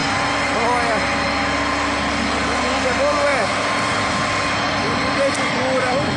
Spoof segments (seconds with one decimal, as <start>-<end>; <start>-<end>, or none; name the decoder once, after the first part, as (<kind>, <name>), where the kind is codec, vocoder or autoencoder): none